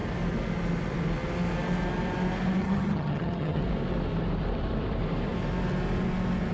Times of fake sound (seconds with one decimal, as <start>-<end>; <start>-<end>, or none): 2.6-3.6